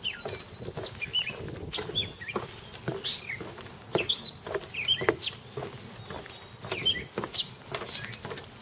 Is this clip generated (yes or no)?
no